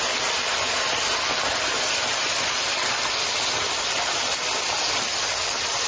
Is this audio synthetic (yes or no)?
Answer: no